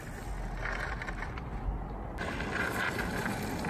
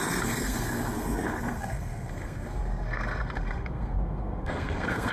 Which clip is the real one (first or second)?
first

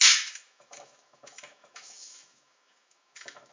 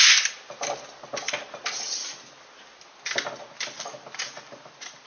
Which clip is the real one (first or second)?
second